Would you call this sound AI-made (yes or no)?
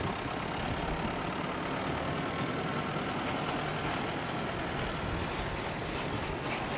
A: no